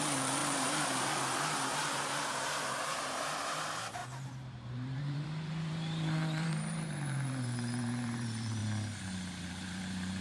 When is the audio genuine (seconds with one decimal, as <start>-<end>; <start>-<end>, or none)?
8.6-9.4